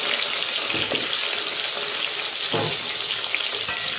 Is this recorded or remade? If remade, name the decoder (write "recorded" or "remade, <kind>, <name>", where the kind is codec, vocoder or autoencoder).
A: recorded